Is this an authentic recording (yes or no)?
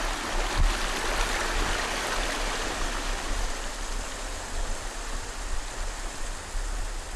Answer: yes